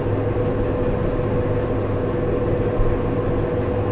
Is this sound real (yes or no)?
yes